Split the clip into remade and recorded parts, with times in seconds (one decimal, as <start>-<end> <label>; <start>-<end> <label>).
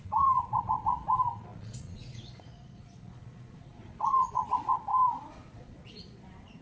0.0-6.6 remade